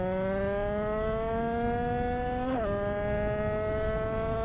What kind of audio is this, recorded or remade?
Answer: recorded